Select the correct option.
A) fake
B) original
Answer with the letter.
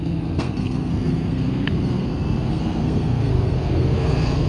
A